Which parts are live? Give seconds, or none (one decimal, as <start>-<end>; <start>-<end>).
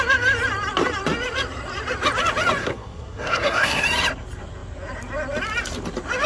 0.0-2.6; 3.8-6.3